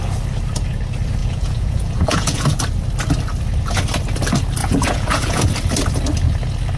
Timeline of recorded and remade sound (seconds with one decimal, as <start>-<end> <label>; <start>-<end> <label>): 0.0-1.2 recorded; 1.2-2.6 remade; 2.6-4.6 recorded; 4.6-5.4 remade; 5.4-6.8 recorded